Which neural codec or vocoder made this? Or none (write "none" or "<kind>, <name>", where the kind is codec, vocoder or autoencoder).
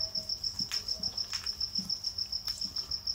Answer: none